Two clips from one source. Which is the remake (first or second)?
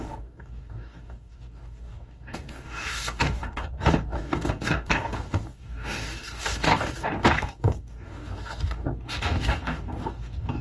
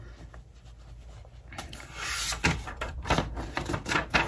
first